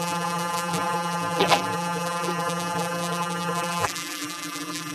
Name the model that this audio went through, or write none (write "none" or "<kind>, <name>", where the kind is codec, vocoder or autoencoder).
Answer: vocoder, BigVGAN v2